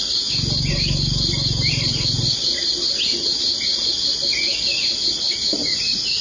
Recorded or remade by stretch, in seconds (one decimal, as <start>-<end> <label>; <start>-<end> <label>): 0.0-5.6 recorded; 5.6-6.2 remade